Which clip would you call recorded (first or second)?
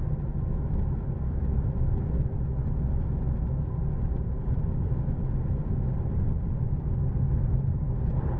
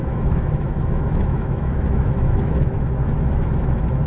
first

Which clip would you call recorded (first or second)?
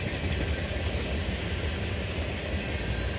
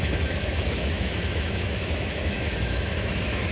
first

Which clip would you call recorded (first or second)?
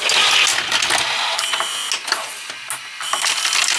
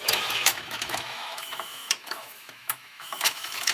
first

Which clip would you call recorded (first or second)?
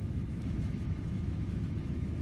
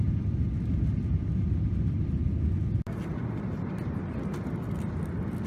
second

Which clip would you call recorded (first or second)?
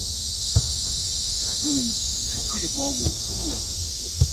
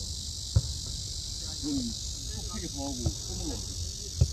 second